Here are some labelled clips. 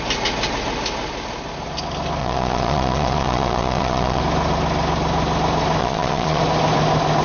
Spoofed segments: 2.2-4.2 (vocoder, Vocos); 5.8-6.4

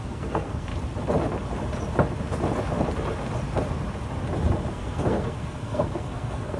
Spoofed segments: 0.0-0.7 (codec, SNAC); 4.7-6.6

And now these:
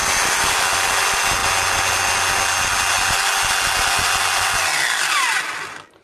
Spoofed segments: none

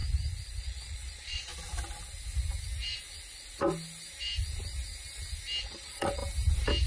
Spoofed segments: 0.6-1.5 (vocoder, Vocos); 5.6-6.2

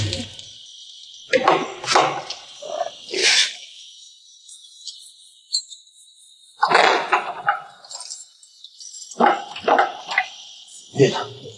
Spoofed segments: 3.2-4.9 (autoencoder, DAC-VAE); 5.4-6.2

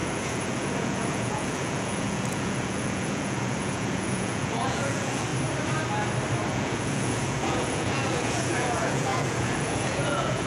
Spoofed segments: 0.0-5.3 (vocoder, Vocos); 6.5-10.5

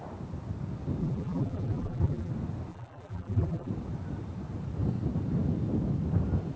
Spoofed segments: 1.0-2.3 (vocoder, BigVGAN v2); 2.7-3.7

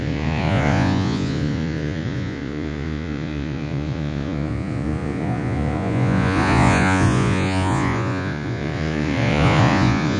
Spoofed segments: 0.0-10.2 (vocoder, Vocos)